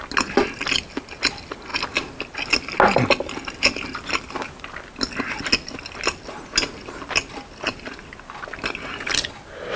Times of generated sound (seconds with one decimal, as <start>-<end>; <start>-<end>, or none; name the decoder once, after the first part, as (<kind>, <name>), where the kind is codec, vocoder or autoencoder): none